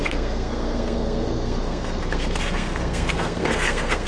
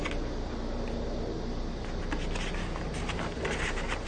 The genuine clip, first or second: second